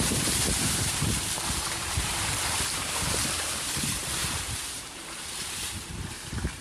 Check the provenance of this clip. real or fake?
fake